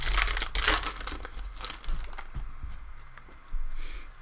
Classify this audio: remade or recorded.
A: recorded